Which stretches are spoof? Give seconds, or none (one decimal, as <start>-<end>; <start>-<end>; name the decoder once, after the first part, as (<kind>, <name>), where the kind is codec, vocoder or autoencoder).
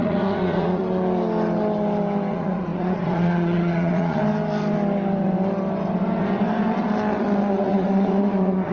0.0-0.8 (vocoder, Vocos); 2.3-4.2; 7.5-8.7